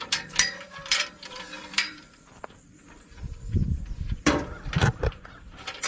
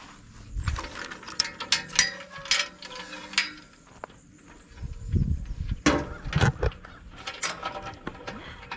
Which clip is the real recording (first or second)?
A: second